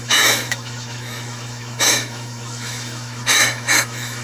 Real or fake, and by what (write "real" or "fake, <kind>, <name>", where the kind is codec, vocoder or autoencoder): fake, autoencoder, DAC-VAE